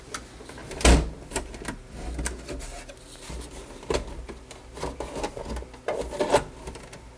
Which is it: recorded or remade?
recorded